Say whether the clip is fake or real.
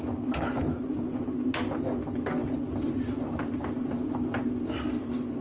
real